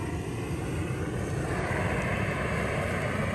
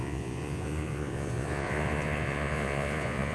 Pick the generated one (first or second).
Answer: second